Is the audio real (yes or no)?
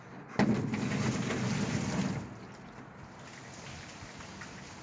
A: yes